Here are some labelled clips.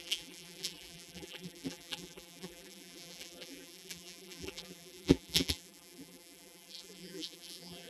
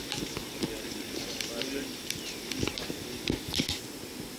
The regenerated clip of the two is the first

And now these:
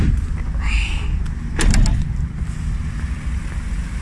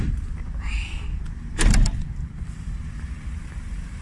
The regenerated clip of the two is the second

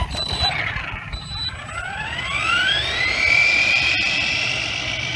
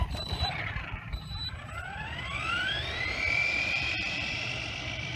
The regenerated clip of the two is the second